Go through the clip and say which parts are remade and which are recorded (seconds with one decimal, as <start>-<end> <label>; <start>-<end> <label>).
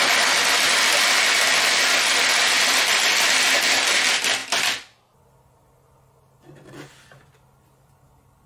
0.0-8.5 recorded